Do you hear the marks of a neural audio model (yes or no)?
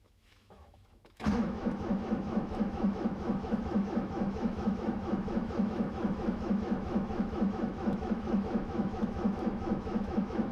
yes